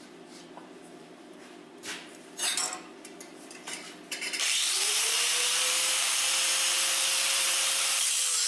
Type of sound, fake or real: fake